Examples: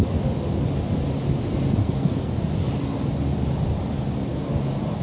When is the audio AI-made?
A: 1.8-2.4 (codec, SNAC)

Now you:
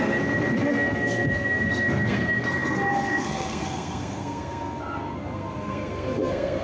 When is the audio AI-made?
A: 0.0-6.6 (codec, SNAC)

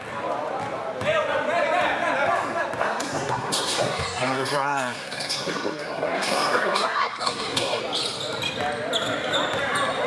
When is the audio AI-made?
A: 2.8-7.8 (codec, SNAC)

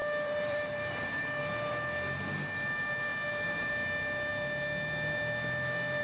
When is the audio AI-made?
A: 0.0-1.4 (vocoder, BigVGAN v2); 3.1-3.7